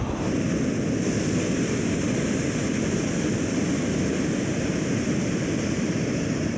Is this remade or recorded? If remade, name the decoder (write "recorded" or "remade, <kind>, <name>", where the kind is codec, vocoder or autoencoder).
recorded